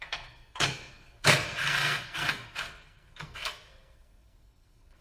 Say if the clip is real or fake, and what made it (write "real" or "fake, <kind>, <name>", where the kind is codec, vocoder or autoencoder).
fake, codec, SNAC